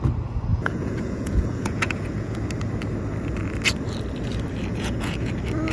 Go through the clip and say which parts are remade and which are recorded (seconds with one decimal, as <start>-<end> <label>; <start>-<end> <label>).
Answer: 0.0-0.5 recorded; 0.5-2.4 remade; 2.4-4.7 recorded; 4.7-5.3 remade; 5.3-5.7 recorded